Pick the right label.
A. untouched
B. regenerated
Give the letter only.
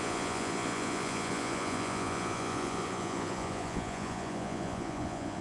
B